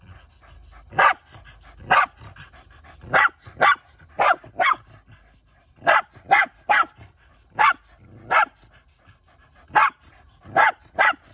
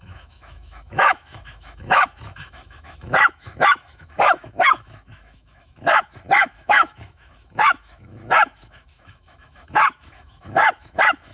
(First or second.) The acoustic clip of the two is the first